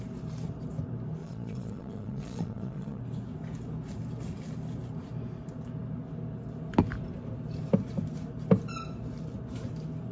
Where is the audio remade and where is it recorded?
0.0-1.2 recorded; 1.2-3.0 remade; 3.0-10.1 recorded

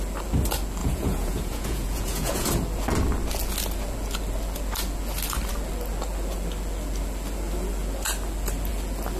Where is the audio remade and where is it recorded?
0.0-0.8 recorded; 0.8-2.5 remade; 2.5-9.2 recorded

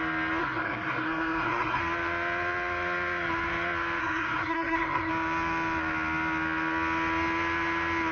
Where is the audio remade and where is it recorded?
0.0-0.4 recorded; 0.4-1.8 remade; 1.8-4.0 recorded; 4.0-5.1 remade; 5.1-8.1 recorded

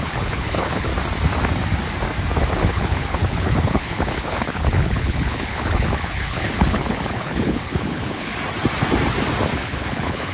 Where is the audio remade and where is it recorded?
0.0-0.9 remade; 0.9-2.7 recorded; 2.7-8.3 remade; 8.3-9.6 recorded; 9.6-10.3 remade

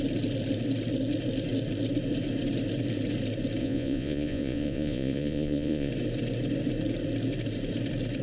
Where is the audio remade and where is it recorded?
0.0-3.6 recorded; 3.6-5.9 remade; 5.9-8.2 recorded

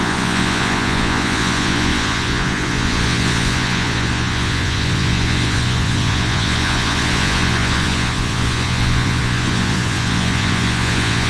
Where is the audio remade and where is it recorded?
0.0-11.3 remade

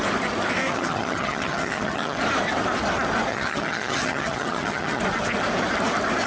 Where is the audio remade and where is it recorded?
0.0-0.7 recorded; 0.7-2.2 remade; 2.2-3.3 recorded; 3.3-5.0 remade; 5.0-6.3 recorded